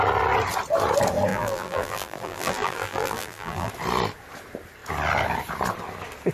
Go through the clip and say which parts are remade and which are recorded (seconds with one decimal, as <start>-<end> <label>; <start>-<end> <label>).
0.0-1.3 recorded; 1.3-3.7 remade; 3.7-6.3 recorded